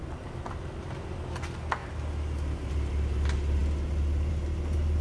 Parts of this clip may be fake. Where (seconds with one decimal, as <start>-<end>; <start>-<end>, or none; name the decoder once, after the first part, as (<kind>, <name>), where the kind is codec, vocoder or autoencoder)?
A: none